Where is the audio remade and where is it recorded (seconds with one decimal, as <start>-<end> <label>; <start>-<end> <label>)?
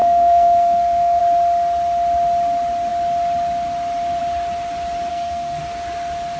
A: 0.0-1.2 remade; 1.2-5.1 recorded; 5.1-5.6 remade; 5.6-6.4 recorded